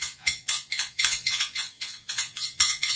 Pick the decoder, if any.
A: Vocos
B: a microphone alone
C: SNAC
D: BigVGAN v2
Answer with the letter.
A